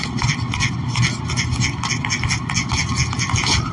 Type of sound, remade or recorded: recorded